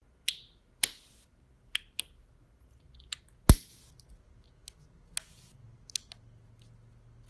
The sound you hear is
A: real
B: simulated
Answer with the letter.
A